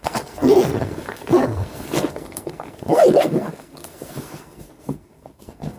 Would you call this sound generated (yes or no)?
yes